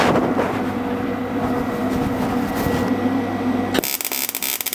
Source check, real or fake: real